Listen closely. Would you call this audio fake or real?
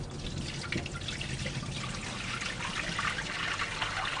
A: real